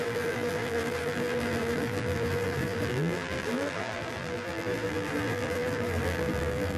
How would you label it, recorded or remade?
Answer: remade